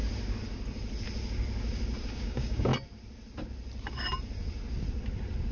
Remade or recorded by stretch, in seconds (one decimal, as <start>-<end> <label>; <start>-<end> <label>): 0.0-2.2 recorded; 2.2-2.7 remade; 2.7-5.5 recorded